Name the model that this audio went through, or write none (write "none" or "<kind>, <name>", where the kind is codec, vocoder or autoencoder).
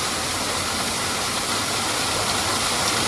none